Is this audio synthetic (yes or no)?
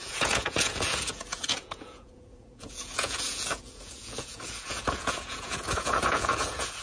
yes